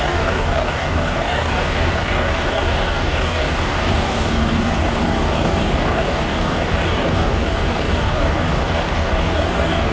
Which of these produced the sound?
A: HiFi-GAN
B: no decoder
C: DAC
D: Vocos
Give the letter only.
C